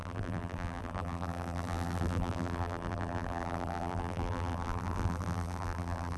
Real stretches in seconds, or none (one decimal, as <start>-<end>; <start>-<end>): none

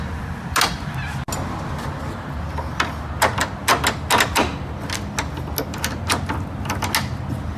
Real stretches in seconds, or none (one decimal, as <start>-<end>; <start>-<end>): 0.0-7.6

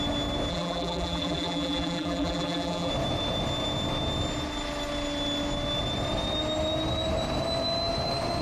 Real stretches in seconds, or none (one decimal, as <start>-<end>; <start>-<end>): 0.0-0.5; 2.9-8.4

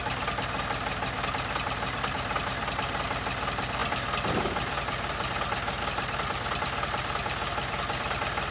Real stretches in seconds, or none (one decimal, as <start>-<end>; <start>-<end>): 0.0-8.5